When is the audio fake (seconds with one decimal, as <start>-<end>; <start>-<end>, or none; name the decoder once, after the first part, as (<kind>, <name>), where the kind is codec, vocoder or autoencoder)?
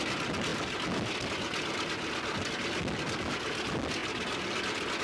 none